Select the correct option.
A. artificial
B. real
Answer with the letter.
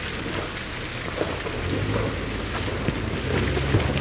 B